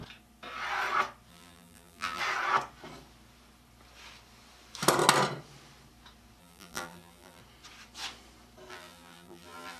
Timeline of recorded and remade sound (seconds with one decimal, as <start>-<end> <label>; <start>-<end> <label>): 0.0-1.3 recorded; 1.3-2.2 remade; 2.2-6.4 recorded; 6.4-7.4 remade; 7.4-8.7 recorded; 8.7-9.8 remade